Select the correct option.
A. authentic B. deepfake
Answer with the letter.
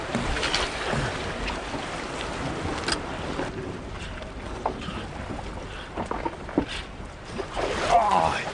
A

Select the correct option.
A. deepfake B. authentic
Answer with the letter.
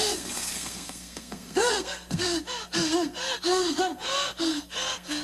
A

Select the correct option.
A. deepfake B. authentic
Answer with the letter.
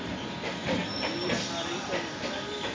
B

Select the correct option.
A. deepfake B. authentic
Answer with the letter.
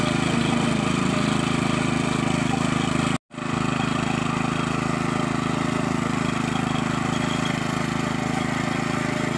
B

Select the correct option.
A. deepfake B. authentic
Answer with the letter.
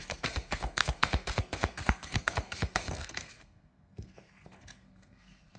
A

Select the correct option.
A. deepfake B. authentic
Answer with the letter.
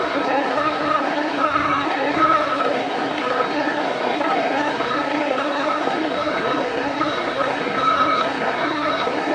A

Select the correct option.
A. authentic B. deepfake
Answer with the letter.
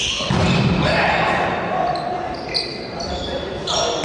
A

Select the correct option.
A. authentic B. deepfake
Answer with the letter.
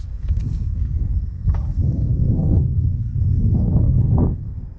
B